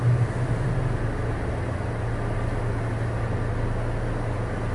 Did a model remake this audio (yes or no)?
no